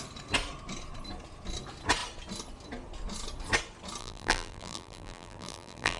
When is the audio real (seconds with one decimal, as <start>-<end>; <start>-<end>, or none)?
0.0-4.0